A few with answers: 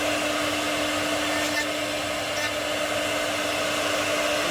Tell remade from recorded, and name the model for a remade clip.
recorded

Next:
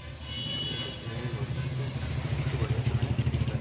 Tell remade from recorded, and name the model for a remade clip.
recorded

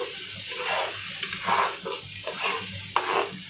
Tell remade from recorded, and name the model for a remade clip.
recorded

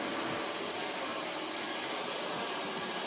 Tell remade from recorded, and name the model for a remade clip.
recorded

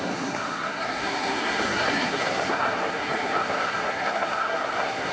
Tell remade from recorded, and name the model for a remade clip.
remade, codec, SNAC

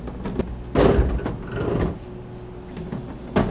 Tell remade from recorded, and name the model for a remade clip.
recorded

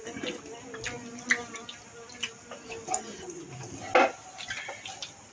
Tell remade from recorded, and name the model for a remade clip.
recorded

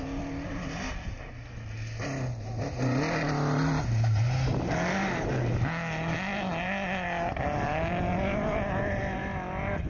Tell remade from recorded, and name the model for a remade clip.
recorded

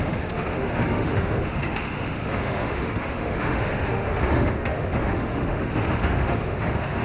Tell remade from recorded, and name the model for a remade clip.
remade, autoencoder, DAC-VAE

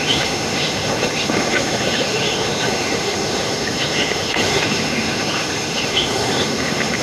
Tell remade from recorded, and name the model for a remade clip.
remade, autoencoder, DAC-VAE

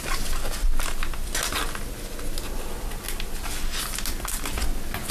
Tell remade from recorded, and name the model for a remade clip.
recorded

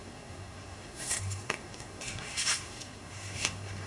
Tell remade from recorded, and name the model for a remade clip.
remade, codec, SNAC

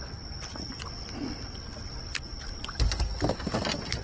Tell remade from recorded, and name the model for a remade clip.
recorded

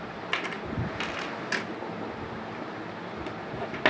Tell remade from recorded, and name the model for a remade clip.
recorded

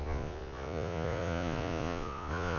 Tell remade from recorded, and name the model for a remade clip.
remade, vocoder, Vocos